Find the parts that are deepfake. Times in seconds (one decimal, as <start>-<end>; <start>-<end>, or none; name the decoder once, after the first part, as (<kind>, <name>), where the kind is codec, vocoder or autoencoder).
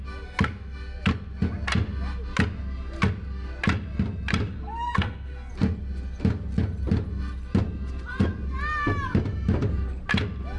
4.5-5.5 (codec, SNAC)